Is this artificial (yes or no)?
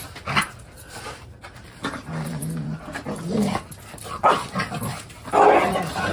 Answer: no